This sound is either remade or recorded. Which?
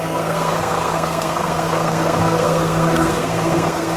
remade